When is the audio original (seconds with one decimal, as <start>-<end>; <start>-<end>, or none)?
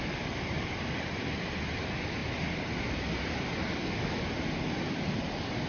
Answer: 0.0-5.7